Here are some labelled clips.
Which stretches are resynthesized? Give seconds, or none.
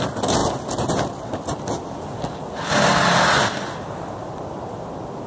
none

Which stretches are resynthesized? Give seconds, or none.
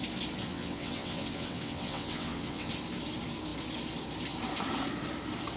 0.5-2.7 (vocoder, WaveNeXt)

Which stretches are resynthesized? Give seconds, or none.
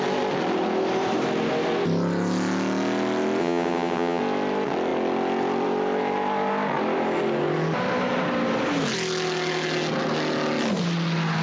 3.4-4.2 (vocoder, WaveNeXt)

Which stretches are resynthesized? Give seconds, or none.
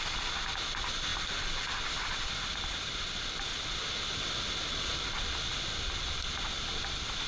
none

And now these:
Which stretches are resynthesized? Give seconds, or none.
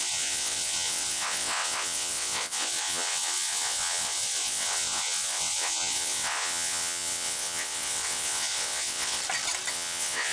0.0-9.2 (vocoder, WaveNeXt); 9.7-10.3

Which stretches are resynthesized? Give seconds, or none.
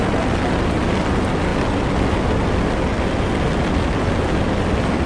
none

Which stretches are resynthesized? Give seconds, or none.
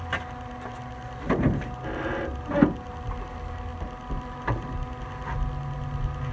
none